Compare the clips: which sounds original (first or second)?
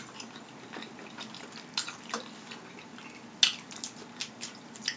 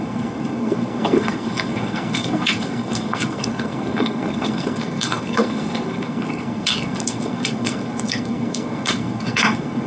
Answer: first